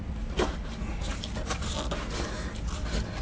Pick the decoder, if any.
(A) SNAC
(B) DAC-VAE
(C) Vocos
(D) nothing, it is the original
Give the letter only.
D